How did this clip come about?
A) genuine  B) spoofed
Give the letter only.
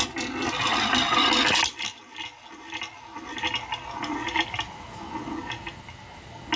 A